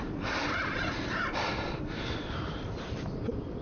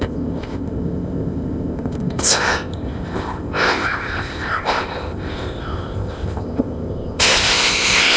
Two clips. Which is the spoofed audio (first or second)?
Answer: second